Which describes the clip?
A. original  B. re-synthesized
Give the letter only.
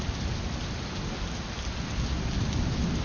A